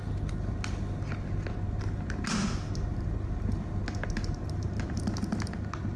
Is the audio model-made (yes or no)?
no